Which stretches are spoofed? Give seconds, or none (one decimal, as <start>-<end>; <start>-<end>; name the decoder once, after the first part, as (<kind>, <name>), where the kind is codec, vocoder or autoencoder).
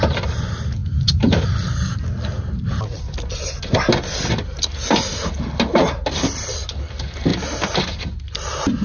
none